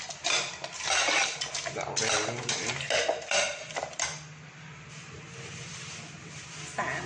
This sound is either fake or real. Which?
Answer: real